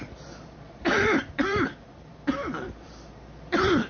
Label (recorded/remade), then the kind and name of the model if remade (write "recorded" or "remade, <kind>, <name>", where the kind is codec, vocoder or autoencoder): remade, vocoder, BigVGAN v2